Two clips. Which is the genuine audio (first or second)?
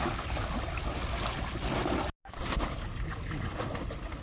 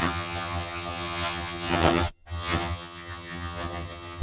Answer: first